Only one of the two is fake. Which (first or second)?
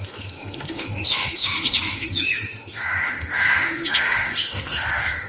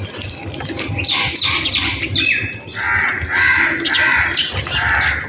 first